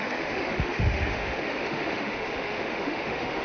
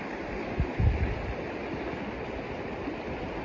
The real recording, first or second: second